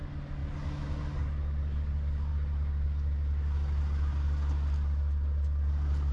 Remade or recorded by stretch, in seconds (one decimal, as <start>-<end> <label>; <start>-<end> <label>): 0.0-6.1 recorded